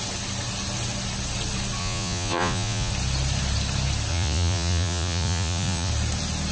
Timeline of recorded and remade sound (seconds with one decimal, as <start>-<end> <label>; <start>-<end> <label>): 0.0-1.8 recorded; 1.8-2.9 remade; 2.9-4.1 recorded; 4.1-5.9 remade; 5.9-6.5 recorded